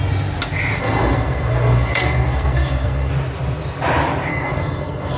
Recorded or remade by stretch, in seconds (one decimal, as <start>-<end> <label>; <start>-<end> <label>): 0.0-0.8 recorded; 0.8-3.1 remade; 3.1-4.3 recorded; 4.3-5.2 remade